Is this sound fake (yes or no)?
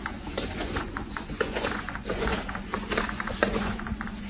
yes